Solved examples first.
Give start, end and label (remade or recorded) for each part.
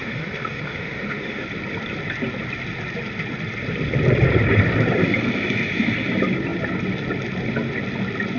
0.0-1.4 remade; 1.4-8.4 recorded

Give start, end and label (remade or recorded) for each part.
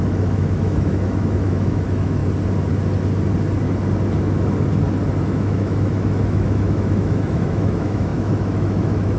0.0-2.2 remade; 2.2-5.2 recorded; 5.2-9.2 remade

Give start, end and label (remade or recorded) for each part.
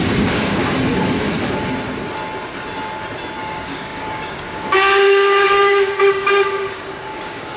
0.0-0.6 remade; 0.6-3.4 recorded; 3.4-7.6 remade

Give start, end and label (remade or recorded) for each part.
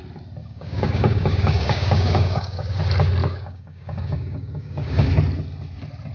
0.0-0.4 recorded; 0.4-2.8 remade; 2.8-3.2 recorded; 3.2-5.1 remade; 5.1-6.1 recorded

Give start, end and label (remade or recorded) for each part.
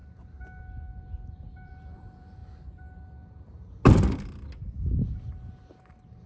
0.0-1.3 recorded; 1.3-2.4 remade; 2.4-5.8 recorded; 5.8-6.3 remade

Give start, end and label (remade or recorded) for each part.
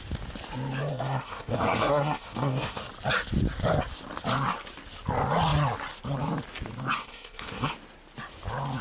0.0-0.9 recorded; 0.9-2.8 remade; 2.8-7.0 recorded; 7.0-7.7 remade; 7.7-8.8 recorded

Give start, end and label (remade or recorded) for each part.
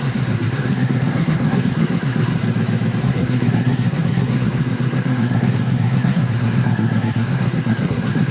0.0-2.4 remade; 2.4-3.0 recorded; 3.0-8.3 remade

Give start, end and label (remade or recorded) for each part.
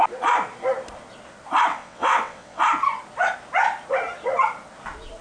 0.0-1.7 recorded; 1.7-2.6 remade; 2.6-5.2 recorded